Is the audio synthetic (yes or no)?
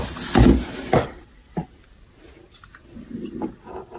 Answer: no